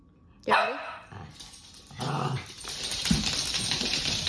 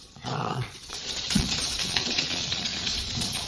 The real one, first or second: first